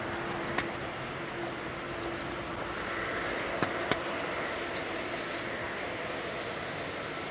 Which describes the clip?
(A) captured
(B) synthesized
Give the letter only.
A